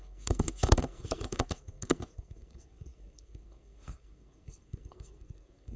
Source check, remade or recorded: remade